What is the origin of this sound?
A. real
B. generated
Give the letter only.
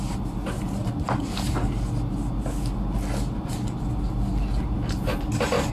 A